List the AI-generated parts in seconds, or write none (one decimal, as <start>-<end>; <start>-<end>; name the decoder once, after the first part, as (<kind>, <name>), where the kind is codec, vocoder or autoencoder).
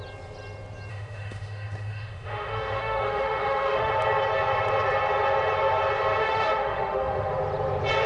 0.9-3.9 (autoencoder, DAC-VAE); 6.2-7.3